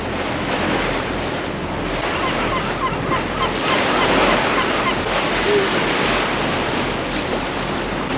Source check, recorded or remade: recorded